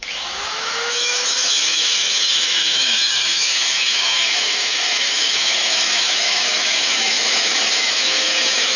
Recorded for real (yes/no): no